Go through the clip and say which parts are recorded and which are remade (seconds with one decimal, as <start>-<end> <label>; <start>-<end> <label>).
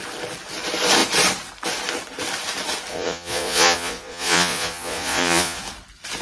0.0-2.9 recorded; 2.9-5.6 remade; 5.6-6.2 recorded